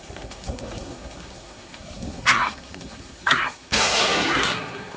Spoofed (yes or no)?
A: yes